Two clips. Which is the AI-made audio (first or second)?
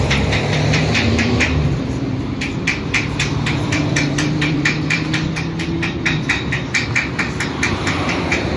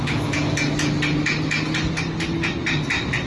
first